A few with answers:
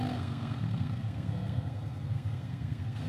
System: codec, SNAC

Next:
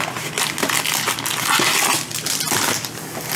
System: none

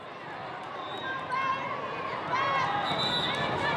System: none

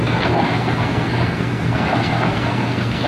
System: codec, SNAC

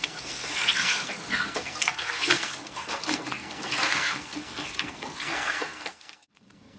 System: codec, SNAC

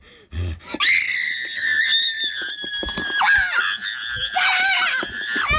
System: none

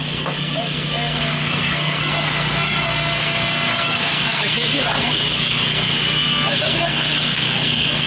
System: codec, SNAC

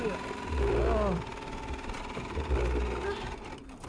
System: none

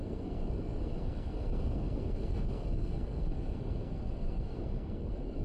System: codec, SNAC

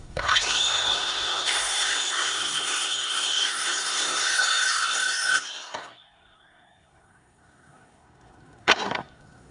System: codec, SNAC